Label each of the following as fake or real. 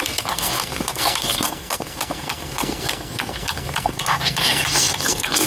fake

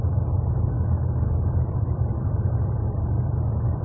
fake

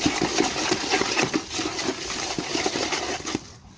real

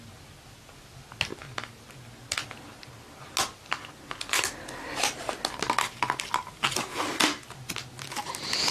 real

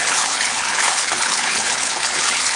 fake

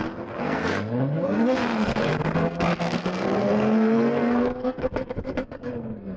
fake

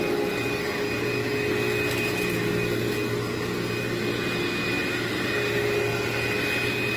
real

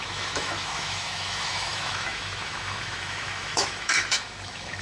fake